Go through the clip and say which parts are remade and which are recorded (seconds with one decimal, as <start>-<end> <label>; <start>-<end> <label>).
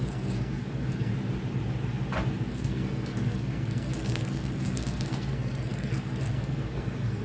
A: 0.0-1.1 remade; 1.1-2.5 recorded; 2.5-7.2 remade